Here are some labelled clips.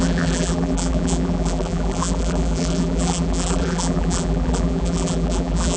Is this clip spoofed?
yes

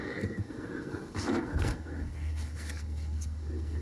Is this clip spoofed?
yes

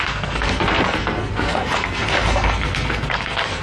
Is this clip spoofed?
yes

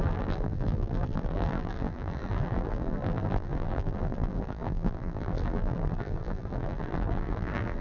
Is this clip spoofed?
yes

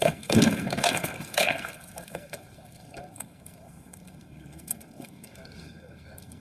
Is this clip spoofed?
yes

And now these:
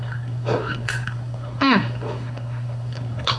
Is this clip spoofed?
yes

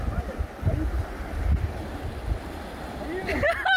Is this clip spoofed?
no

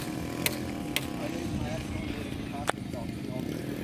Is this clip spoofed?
no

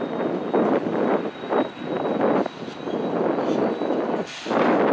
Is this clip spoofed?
no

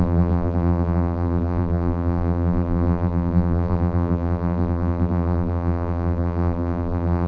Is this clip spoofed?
yes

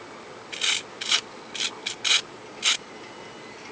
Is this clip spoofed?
no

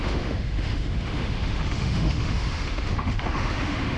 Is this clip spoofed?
yes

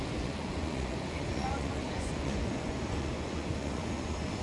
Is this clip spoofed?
yes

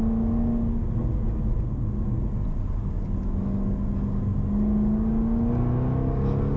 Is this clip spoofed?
no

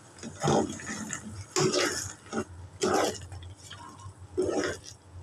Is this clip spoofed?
no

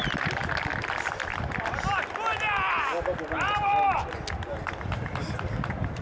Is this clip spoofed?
no